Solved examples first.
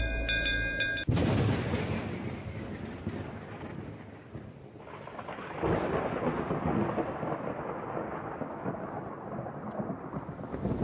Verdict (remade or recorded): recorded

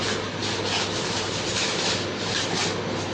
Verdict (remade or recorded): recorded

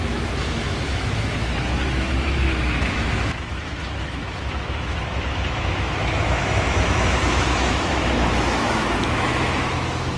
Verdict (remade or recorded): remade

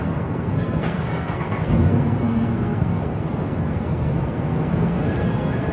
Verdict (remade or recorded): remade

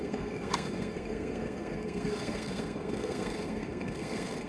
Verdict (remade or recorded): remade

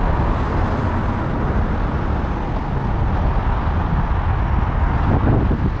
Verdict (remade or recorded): recorded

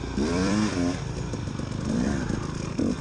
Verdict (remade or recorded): remade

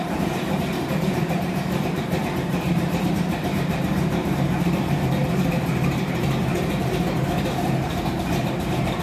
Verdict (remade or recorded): remade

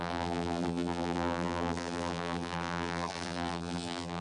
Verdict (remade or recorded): remade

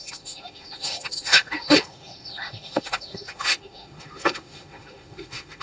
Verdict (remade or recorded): remade